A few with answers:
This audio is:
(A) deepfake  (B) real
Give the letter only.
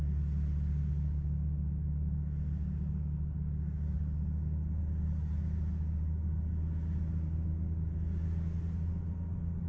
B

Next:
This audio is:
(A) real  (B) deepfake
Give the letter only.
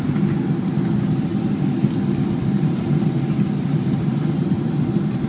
A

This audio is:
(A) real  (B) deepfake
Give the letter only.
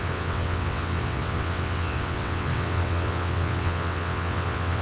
B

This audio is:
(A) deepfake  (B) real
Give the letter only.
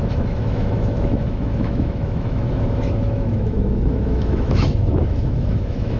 A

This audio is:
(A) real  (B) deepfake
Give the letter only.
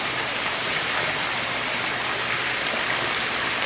A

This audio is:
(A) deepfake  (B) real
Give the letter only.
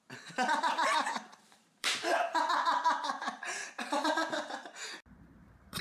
A